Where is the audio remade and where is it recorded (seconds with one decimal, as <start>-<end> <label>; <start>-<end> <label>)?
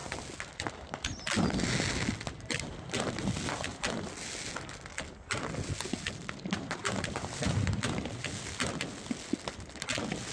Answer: 0.0-3.7 recorded; 3.7-4.5 remade; 4.5-6.8 recorded; 6.8-8.0 remade; 8.0-10.3 recorded